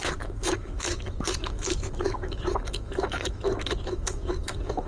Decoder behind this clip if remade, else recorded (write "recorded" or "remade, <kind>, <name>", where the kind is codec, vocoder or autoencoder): remade, autoencoder, DAC-VAE